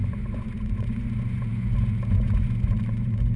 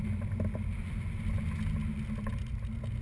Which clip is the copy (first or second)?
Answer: first